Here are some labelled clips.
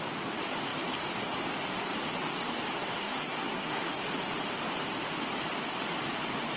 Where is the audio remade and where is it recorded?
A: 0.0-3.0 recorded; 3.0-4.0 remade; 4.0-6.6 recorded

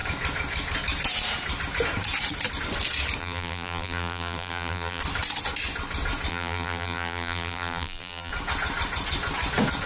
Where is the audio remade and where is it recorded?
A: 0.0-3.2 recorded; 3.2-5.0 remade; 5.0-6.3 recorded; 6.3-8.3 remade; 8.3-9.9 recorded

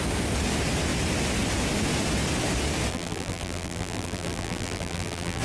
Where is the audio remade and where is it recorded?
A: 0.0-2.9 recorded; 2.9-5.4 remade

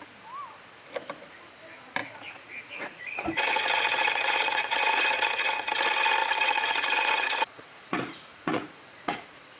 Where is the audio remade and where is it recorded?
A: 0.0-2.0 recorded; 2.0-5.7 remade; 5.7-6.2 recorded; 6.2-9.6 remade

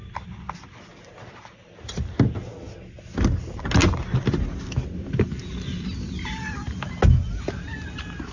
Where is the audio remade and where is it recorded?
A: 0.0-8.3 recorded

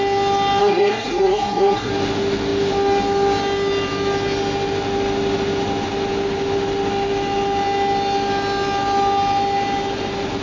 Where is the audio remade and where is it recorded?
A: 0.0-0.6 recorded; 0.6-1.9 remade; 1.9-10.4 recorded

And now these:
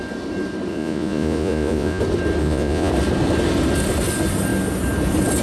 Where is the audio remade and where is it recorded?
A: 0.0-0.7 recorded; 0.7-2.0 remade; 2.0-2.4 recorded; 2.4-2.9 remade; 2.9-5.4 recorded